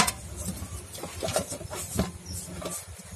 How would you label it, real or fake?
real